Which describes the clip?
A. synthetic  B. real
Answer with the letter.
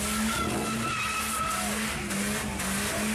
B